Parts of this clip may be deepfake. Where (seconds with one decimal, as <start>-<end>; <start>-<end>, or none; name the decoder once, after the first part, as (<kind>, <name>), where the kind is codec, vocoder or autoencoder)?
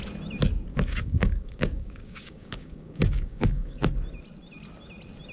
0.7-3.9 (codec, DAC)